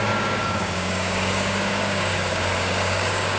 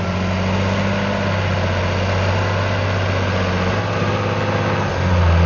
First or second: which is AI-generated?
first